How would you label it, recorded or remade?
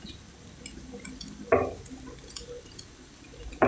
recorded